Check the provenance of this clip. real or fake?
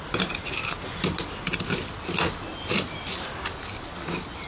real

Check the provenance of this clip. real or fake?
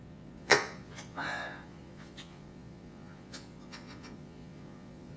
fake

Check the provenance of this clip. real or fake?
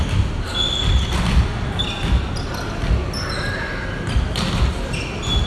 real